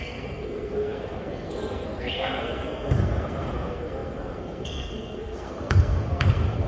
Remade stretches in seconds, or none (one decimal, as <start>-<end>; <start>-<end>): 0.0-6.7